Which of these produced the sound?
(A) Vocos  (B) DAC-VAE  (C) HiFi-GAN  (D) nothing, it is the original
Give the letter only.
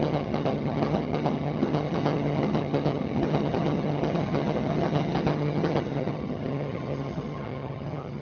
C